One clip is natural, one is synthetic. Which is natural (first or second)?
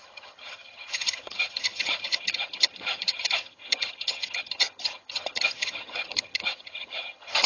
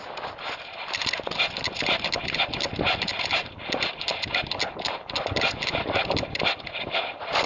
second